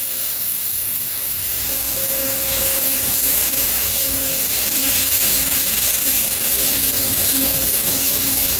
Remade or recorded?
remade